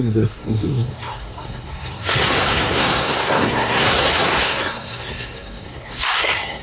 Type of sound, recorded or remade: remade